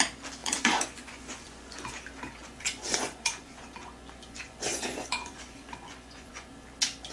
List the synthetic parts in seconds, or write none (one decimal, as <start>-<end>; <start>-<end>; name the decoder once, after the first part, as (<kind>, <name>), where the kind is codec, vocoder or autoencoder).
0.4-1.9 (vocoder, Vocos); 2.4-6.5